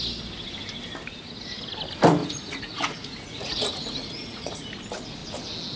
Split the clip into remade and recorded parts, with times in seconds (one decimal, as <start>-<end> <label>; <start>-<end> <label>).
0.0-2.2 recorded; 2.2-4.7 remade; 4.7-5.8 recorded